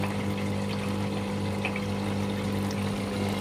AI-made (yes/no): no